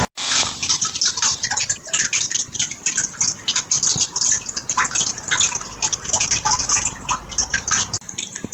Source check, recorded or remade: recorded